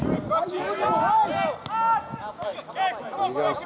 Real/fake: real